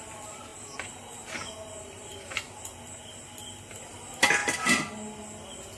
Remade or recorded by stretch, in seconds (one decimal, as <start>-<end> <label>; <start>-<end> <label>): 0.0-5.8 recorded